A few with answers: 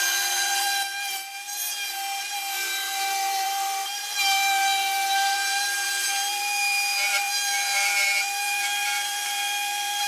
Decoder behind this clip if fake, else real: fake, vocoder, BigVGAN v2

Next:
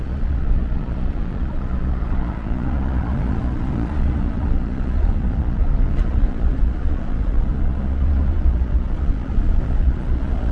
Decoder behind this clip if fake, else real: fake, vocoder, Vocos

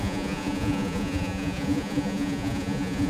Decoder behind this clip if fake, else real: fake, vocoder, Vocos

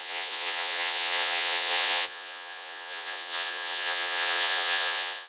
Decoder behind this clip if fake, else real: fake, vocoder, Vocos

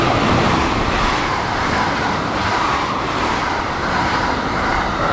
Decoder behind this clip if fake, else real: fake, vocoder, BigVGAN v2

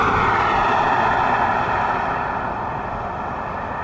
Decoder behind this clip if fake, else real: real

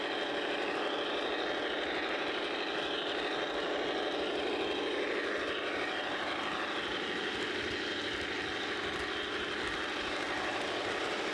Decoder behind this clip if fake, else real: real